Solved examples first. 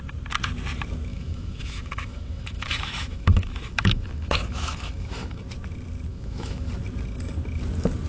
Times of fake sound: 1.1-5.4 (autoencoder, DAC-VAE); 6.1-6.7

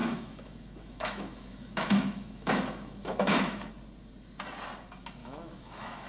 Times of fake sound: 0.0-3.7 (autoencoder, DAC-VAE); 5.2-6.1